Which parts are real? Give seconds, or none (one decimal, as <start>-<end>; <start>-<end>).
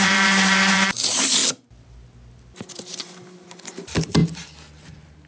1.4-2.7; 4.2-5.3